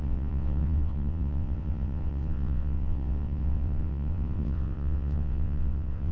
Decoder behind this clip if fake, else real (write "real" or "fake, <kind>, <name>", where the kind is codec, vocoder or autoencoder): fake, vocoder, WaveNeXt